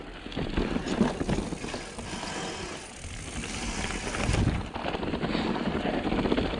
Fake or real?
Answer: real